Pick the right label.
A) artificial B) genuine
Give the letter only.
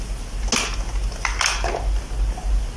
B